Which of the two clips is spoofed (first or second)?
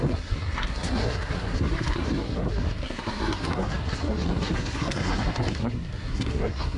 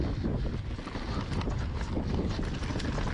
first